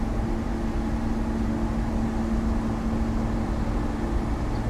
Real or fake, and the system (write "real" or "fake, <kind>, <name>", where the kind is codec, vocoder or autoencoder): real